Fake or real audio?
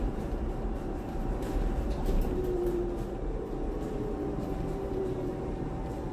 fake